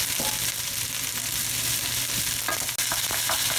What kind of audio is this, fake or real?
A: real